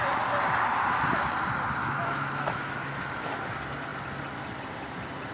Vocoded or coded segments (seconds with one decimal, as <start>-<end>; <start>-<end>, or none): 1.8-3.3